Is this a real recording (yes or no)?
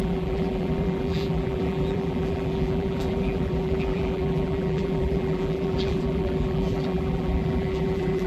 no